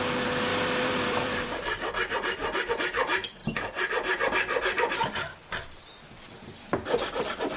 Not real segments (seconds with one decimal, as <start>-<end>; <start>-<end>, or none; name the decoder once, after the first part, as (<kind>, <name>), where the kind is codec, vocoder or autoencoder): 0.5-2.7 (vocoder, BigVGAN v2); 3.4-7.6